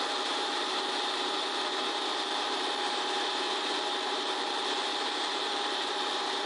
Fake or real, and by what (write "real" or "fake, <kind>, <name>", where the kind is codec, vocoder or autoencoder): fake, vocoder, BigVGAN v2